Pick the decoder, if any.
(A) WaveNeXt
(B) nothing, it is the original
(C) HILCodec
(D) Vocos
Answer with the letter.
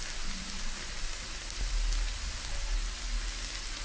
B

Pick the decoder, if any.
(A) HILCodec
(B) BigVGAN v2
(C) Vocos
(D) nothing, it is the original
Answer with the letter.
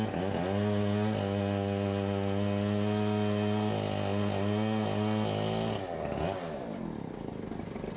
D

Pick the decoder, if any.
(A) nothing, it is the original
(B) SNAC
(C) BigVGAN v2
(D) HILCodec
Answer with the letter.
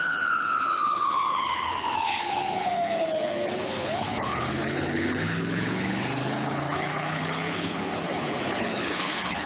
D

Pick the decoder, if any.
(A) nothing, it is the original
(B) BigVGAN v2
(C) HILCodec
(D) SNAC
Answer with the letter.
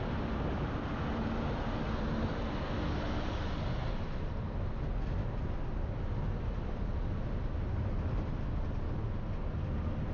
A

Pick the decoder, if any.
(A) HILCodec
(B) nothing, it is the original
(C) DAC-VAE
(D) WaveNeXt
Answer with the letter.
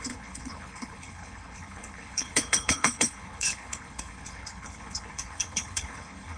A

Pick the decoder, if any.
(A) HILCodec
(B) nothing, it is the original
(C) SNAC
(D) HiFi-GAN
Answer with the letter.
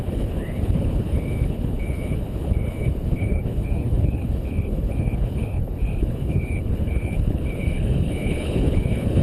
A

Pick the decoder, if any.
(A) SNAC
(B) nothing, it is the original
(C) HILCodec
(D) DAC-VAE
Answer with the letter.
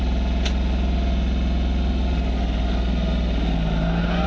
B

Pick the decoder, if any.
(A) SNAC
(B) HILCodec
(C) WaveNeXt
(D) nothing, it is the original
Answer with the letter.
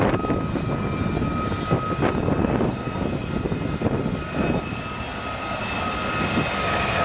D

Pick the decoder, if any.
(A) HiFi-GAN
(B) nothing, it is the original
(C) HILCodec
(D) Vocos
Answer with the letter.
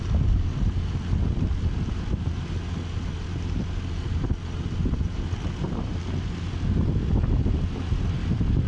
B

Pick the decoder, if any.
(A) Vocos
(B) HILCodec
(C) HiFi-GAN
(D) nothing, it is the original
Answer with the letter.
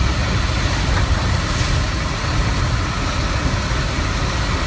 D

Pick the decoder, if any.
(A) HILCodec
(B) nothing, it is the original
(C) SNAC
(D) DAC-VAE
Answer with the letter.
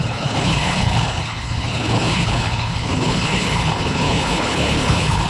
A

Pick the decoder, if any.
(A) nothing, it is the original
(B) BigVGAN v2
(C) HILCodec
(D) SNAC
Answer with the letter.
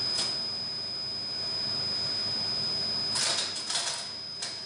A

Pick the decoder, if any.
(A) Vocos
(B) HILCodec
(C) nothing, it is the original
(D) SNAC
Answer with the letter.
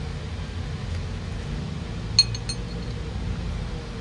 C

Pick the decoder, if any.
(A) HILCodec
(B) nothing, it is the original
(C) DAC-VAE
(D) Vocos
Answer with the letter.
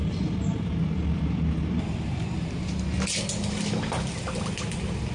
B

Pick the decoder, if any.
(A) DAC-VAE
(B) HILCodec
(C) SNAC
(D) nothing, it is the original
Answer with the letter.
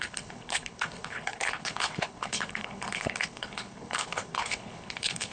B